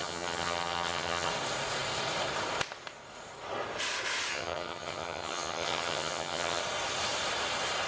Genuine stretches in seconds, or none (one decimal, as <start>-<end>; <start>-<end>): 1.3-4.3; 6.6-7.9